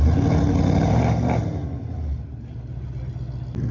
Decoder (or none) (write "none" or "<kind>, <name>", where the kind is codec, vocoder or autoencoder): none